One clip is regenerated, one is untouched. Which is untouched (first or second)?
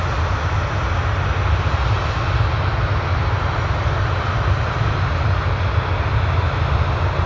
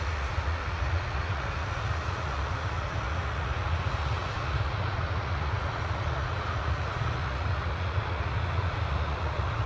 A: first